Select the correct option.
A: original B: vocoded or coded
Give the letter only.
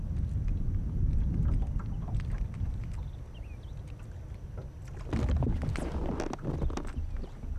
A